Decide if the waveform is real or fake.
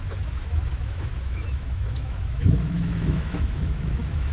fake